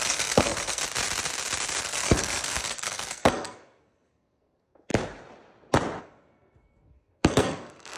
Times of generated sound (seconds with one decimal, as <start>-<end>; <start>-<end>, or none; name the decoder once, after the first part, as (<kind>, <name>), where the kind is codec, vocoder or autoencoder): 0.0-0.8 (codec, SNAC); 1.8-4.9; 6.0-8.0